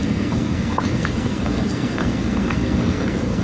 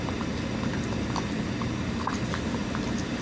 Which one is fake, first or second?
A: first